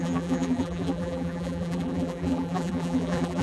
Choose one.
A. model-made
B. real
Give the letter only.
A